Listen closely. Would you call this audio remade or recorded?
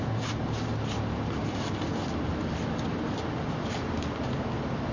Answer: recorded